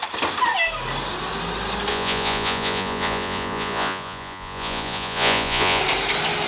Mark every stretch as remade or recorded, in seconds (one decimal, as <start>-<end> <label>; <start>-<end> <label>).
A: 0.0-1.9 recorded; 1.9-5.8 remade; 5.8-6.5 recorded